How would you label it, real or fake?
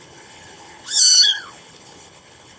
fake